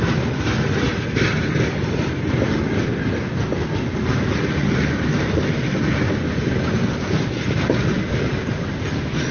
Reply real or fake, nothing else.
real